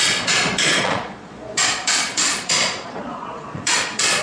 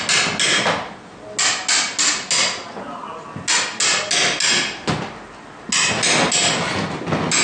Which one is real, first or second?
second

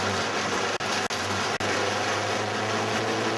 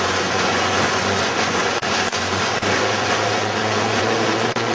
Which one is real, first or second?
first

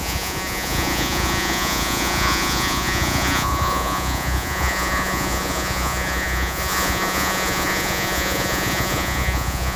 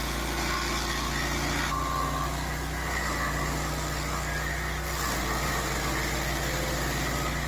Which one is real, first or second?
second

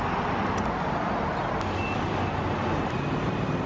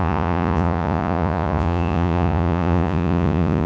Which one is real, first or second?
first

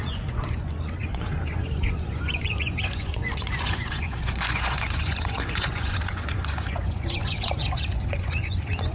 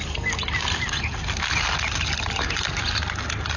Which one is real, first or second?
second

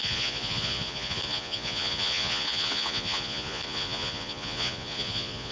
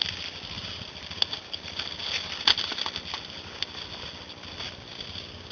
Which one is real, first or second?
second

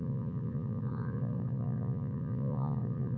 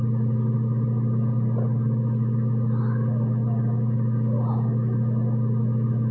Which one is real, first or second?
second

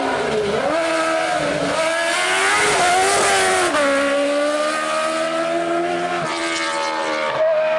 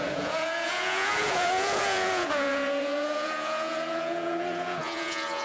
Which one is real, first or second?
first